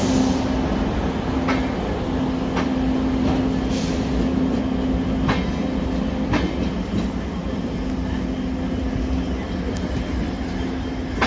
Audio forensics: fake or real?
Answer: real